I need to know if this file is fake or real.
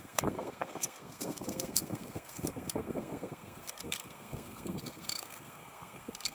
fake